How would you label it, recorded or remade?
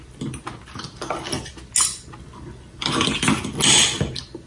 recorded